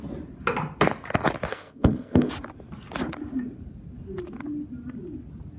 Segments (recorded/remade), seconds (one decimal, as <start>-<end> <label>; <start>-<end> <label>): 0.0-1.5 recorded; 1.5-2.3 remade; 2.3-5.6 recorded